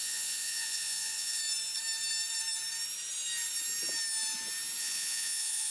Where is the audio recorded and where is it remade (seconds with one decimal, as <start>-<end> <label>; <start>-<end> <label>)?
0.0-1.4 remade; 1.4-4.8 recorded; 4.8-5.7 remade